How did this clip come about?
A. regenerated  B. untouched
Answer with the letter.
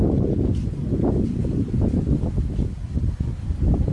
B